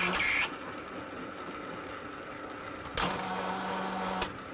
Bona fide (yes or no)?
yes